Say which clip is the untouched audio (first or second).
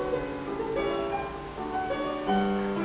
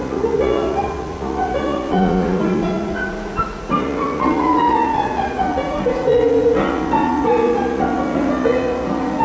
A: first